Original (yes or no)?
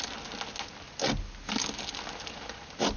yes